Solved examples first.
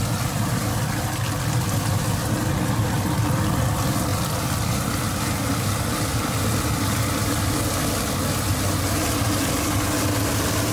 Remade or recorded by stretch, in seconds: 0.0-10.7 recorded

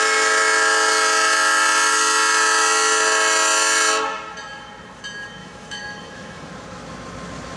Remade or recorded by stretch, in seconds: 0.0-5.4 recorded; 5.4-6.5 remade; 6.5-7.6 recorded

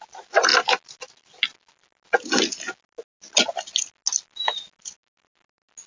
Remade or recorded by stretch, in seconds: 0.0-5.9 recorded